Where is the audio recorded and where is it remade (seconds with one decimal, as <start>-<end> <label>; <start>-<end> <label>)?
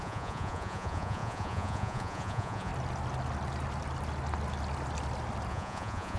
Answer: 0.0-2.7 remade; 2.7-5.5 recorded; 5.5-6.2 remade